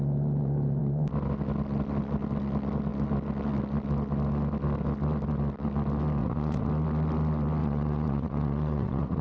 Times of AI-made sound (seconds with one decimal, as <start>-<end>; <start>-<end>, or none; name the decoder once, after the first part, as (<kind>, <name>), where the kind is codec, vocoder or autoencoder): 6.2-6.7 (vocoder, Vocos); 7.6-9.2